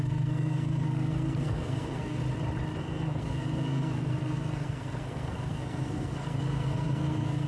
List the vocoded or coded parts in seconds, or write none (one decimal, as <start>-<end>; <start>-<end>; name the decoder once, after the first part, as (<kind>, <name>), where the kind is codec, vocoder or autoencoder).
0.0-2.2 (codec, SNAC); 2.8-7.5